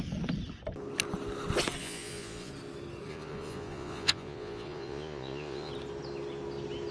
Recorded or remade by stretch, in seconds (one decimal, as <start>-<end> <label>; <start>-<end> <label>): 0.0-1.8 recorded; 1.8-2.5 remade; 2.5-3.1 recorded; 3.1-5.7 remade; 5.7-6.9 recorded